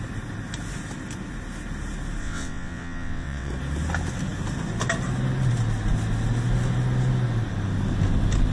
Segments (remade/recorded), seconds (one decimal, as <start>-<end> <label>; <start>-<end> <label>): 0.0-2.2 recorded; 2.2-3.5 remade; 3.5-8.5 recorded